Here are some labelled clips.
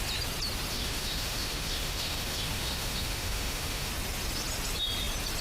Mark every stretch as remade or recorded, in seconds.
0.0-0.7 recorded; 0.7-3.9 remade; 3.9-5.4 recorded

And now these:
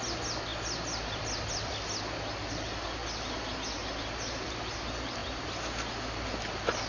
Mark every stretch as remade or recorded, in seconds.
0.0-6.9 recorded